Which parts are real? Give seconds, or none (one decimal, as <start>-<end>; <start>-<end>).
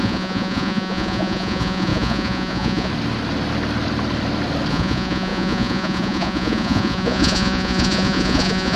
2.9-4.7